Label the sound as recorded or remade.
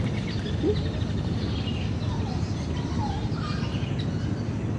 recorded